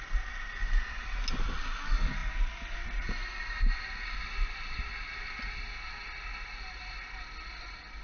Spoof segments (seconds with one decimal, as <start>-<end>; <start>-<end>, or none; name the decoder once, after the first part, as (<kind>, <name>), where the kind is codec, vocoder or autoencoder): none